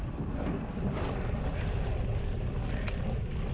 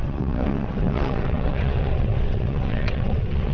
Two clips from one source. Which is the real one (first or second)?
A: first